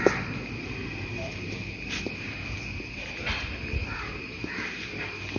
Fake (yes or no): no